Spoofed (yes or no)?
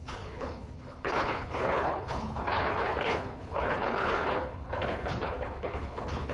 yes